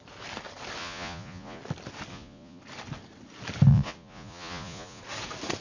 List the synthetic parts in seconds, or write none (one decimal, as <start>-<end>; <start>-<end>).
0.8-1.6; 2.1-2.6; 3.7-5.0